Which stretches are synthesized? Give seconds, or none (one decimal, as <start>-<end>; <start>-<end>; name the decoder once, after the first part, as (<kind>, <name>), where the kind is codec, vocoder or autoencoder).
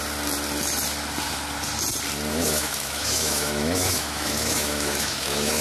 2.3-5.6 (autoencoder, DAC-VAE)